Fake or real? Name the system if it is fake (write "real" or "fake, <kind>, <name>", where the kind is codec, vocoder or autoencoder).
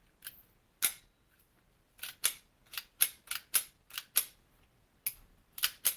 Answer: real